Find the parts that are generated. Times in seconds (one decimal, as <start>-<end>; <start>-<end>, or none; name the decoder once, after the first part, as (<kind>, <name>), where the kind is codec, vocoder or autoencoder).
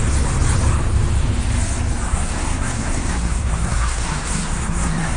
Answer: 2.1-5.2 (codec, SNAC)